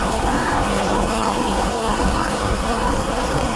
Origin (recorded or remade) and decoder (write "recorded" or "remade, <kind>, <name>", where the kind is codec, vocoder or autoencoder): remade, codec, SNAC